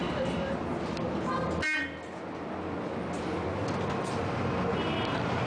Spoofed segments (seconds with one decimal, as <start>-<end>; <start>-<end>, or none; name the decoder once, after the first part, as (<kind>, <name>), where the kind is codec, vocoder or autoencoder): none